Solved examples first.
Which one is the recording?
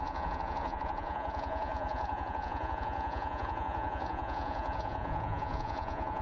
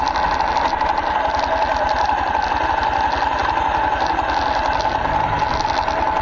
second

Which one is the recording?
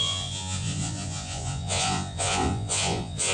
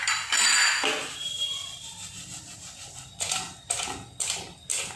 second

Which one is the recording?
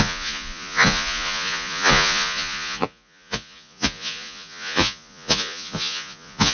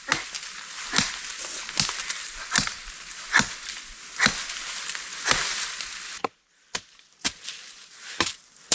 second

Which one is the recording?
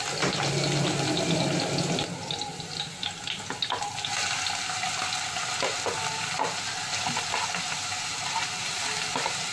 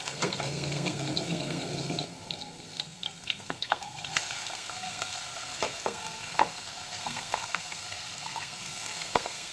first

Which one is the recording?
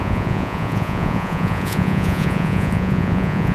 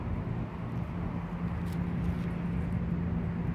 second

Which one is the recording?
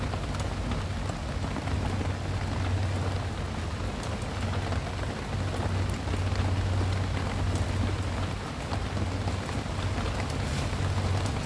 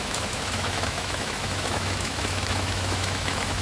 first